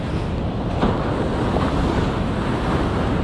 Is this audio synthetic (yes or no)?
no